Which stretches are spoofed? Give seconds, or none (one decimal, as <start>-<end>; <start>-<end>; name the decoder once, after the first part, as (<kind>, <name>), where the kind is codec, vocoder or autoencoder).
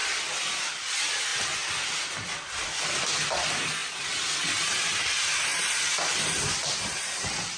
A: 0.0-0.8 (vocoder, BigVGAN v2); 1.3-3.3; 5.5-7.0